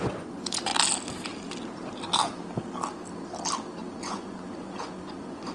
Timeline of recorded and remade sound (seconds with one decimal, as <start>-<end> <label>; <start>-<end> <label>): 0.0-0.7 remade; 0.7-4.0 recorded; 4.0-5.5 remade